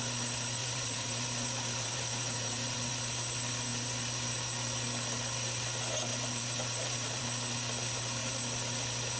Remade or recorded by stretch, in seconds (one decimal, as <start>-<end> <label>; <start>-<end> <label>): 0.0-0.6 recorded; 0.6-2.9 remade; 2.9-6.1 recorded; 6.1-7.2 remade; 7.2-9.2 recorded